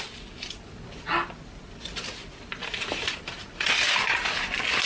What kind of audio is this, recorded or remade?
recorded